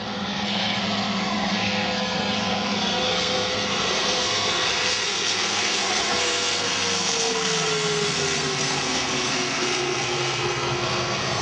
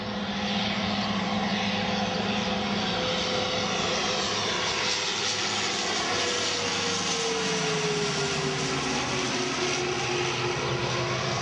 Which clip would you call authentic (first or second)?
second